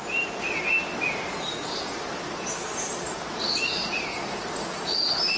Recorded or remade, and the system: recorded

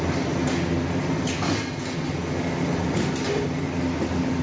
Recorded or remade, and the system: recorded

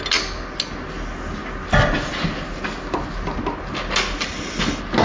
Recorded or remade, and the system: recorded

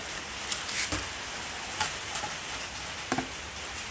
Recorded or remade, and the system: recorded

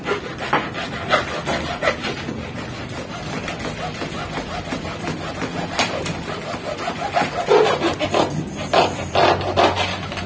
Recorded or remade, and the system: recorded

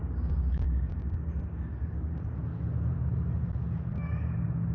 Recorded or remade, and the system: recorded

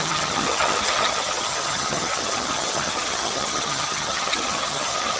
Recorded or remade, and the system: remade, vocoder, HiFi-GAN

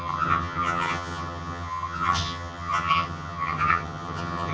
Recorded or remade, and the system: remade, vocoder, HiFi-GAN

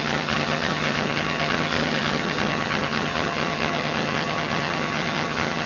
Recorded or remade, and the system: remade, vocoder, HiFi-GAN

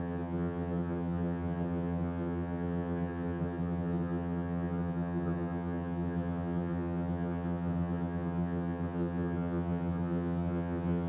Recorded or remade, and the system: remade, vocoder, HiFi-GAN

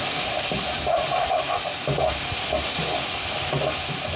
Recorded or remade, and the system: recorded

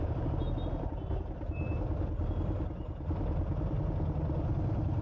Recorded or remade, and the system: recorded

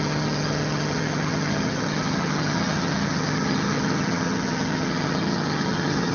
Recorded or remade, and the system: remade, vocoder, HiFi-GAN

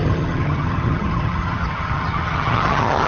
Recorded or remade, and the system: remade, vocoder, HiFi-GAN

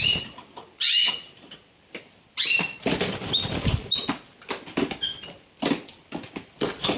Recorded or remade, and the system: recorded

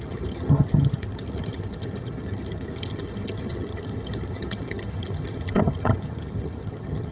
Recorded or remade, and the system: remade, vocoder, HiFi-GAN